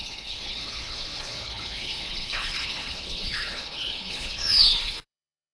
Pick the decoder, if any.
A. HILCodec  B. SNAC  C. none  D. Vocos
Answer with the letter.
A